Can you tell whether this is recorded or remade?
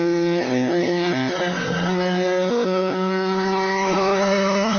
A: remade